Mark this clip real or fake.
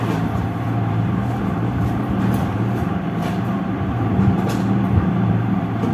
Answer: fake